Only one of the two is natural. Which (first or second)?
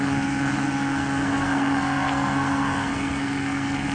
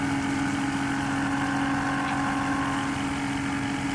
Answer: second